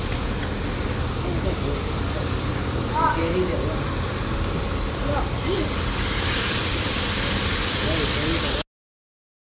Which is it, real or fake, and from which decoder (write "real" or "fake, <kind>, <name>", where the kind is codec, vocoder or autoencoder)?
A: real